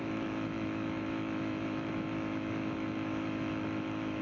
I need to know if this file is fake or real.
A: fake